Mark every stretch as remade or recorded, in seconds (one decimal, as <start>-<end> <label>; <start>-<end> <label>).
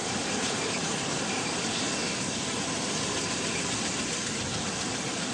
0.0-1.6 remade; 1.6-5.3 recorded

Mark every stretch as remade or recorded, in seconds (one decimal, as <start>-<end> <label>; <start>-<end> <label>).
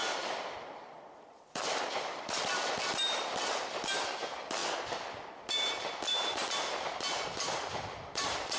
0.0-0.7 recorded; 0.7-4.6 remade; 4.6-5.5 recorded; 5.5-8.6 remade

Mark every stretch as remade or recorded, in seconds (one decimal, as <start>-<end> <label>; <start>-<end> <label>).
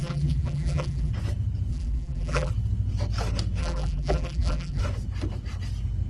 0.0-1.1 remade; 1.1-1.7 recorded; 1.7-2.5 remade; 2.5-3.6 recorded; 3.6-4.8 remade; 4.8-6.1 recorded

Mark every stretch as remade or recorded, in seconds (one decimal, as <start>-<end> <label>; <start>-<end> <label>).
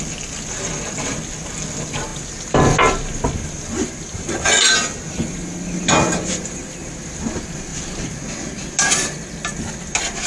0.0-10.3 recorded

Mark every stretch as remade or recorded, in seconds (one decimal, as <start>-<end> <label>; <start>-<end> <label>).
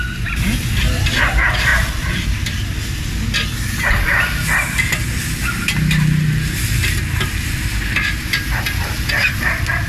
0.0-1.7 recorded; 1.7-3.1 remade; 3.1-9.9 recorded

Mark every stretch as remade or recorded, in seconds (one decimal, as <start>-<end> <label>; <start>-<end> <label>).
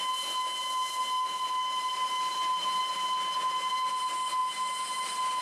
0.0-2.3 recorded; 2.3-2.8 remade; 2.8-4.4 recorded; 4.4-5.4 remade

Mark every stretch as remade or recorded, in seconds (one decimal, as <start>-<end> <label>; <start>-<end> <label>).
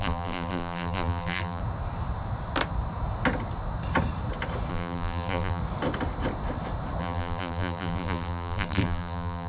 0.0-1.6 remade; 1.6-4.7 recorded; 4.7-5.6 remade; 5.6-7.0 recorded; 7.0-9.5 remade